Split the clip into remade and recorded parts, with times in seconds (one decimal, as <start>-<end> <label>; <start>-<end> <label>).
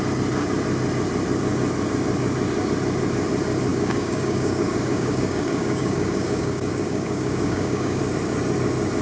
0.0-3.7 recorded; 3.7-8.0 remade; 8.0-9.0 recorded